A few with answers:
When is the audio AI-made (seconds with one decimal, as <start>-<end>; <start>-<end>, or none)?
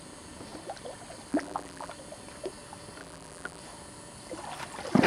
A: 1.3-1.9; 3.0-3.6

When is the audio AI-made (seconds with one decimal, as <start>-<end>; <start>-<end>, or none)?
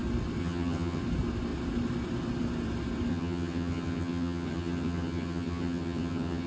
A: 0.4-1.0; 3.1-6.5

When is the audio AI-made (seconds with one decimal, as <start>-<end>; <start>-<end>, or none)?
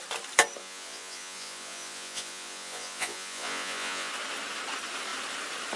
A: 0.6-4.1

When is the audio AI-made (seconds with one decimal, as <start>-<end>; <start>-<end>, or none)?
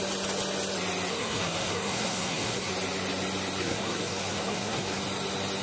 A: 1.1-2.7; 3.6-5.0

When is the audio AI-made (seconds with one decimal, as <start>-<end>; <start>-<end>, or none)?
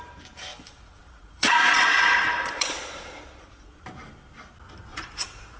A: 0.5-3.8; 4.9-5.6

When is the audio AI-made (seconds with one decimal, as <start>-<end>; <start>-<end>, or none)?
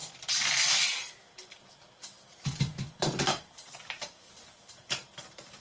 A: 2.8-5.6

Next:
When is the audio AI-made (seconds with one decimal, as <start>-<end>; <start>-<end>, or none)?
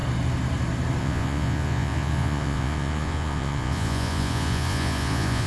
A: 1.0-5.5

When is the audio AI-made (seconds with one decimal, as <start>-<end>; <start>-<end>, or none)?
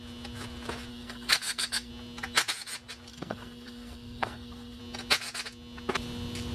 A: 0.9-1.9; 3.1-4.8